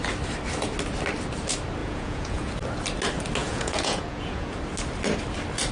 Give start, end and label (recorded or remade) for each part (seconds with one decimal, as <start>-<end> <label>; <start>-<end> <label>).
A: 0.0-1.8 recorded; 1.8-2.5 remade; 2.5-3.4 recorded; 3.4-4.6 remade; 4.6-5.7 recorded